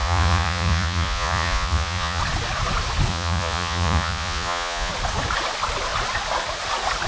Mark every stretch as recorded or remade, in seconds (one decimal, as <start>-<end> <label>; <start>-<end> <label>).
0.0-2.2 remade; 2.2-3.1 recorded; 3.1-4.9 remade; 4.9-7.1 recorded